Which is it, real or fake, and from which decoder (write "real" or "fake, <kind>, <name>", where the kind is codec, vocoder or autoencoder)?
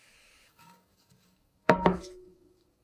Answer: fake, codec, DAC